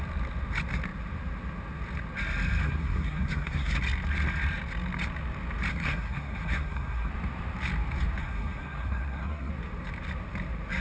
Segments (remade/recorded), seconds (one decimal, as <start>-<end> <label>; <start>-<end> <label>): 0.0-2.6 recorded; 2.6-3.8 remade; 3.8-5.7 recorded; 5.7-7.1 remade; 7.1-8.2 recorded; 8.2-9.5 remade; 9.5-10.8 recorded